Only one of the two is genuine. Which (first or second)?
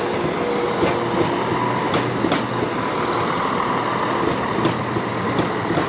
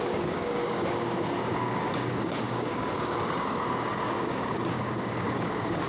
first